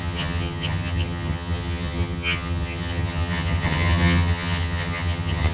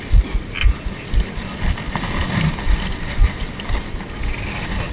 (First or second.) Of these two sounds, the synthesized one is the first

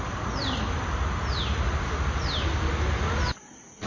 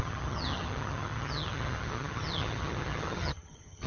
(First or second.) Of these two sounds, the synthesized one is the second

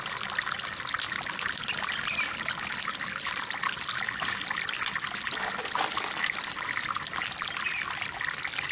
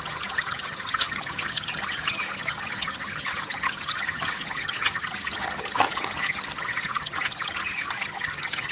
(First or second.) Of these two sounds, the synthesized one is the second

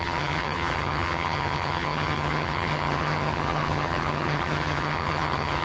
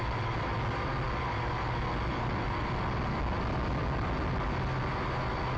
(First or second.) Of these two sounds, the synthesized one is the first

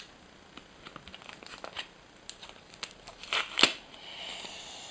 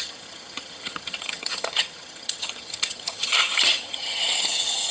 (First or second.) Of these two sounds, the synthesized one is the second